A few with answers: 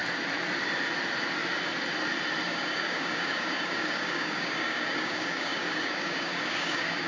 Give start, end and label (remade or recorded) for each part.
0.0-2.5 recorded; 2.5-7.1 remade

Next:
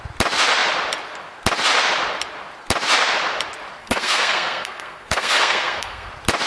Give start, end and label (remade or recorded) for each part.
0.0-3.8 recorded; 3.8-6.1 remade; 6.1-6.5 recorded

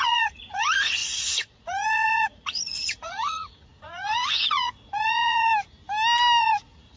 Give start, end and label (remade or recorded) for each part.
0.0-5.5 remade; 5.5-6.4 recorded; 6.4-7.0 remade

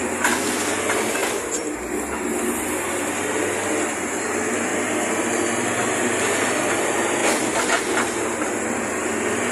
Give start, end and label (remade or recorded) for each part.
0.0-9.5 recorded